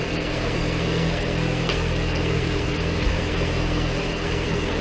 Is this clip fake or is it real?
fake